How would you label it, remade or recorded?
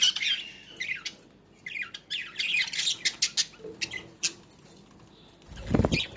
recorded